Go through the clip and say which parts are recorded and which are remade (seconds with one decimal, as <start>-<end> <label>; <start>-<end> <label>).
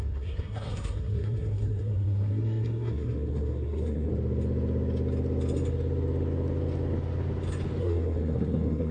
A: 0.0-4.1 remade; 4.1-7.8 recorded; 7.8-8.9 remade